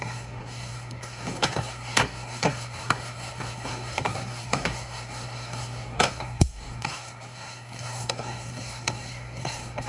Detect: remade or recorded remade